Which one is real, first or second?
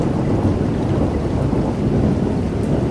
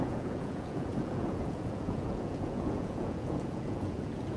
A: first